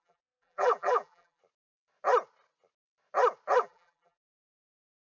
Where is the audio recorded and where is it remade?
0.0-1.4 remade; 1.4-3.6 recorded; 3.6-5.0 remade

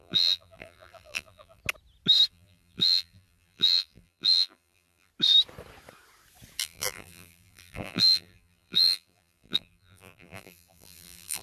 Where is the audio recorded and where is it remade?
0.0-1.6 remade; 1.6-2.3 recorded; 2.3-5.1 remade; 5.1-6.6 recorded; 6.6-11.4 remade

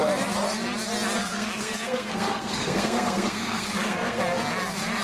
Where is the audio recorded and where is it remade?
0.0-1.2 recorded; 1.2-4.2 remade; 4.2-5.0 recorded

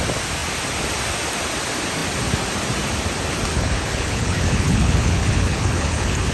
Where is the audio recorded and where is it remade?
0.0-3.5 recorded; 3.5-6.3 remade

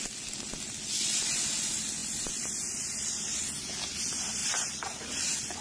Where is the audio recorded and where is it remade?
0.0-2.0 recorded; 2.0-3.2 remade; 3.2-4.4 recorded; 4.4-5.6 remade

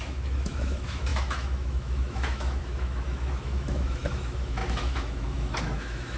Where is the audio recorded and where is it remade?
0.0-6.2 remade

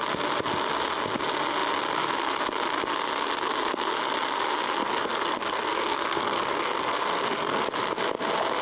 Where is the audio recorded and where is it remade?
0.0-4.8 recorded; 4.8-7.6 remade; 7.6-8.6 recorded